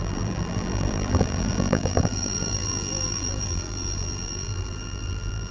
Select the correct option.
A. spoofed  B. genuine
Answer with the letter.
A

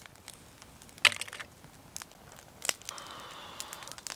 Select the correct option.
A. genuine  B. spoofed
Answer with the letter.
A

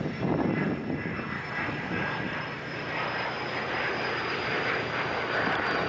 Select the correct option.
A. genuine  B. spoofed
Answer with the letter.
A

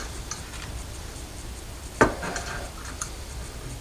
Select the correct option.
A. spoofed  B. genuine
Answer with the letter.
A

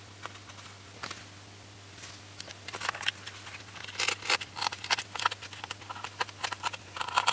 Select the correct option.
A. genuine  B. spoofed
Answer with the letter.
A